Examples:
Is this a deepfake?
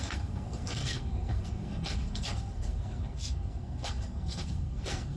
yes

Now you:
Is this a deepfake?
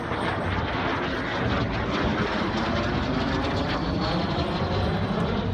no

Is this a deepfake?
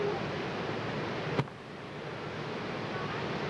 no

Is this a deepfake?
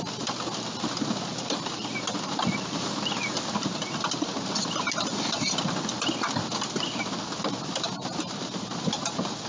no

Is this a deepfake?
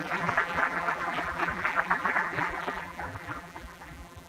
yes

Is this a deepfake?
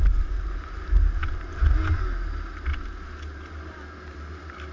no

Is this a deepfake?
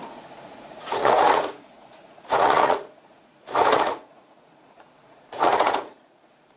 yes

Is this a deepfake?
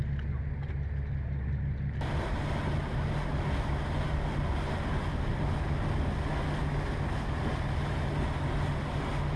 no